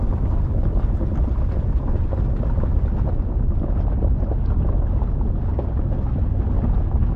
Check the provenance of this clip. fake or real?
real